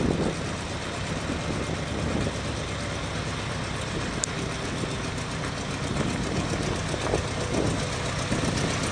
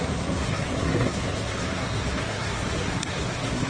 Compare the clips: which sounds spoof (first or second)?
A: second